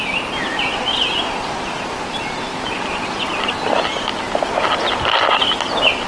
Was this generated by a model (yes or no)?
no